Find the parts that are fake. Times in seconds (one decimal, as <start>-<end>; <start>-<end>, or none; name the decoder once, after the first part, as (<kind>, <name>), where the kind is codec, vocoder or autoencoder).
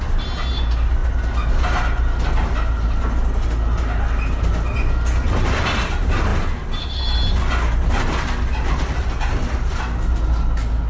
none